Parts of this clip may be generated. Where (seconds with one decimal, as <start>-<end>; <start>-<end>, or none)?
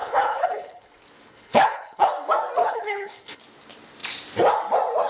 0.0-0.9; 1.3-2.1; 2.6-3.4